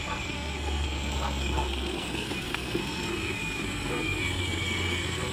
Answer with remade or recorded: remade